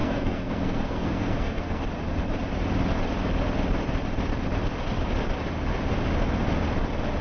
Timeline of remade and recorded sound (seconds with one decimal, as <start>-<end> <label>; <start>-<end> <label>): 0.0-1.8 remade; 1.8-7.2 recorded